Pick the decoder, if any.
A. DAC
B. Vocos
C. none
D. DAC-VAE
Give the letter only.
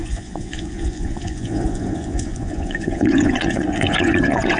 B